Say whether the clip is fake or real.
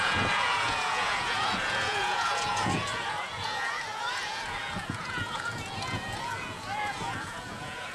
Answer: fake